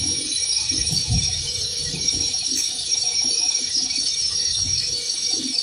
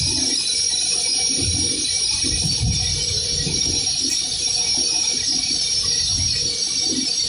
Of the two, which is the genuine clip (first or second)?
second